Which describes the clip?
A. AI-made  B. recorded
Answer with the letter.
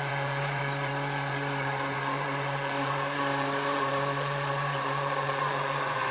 A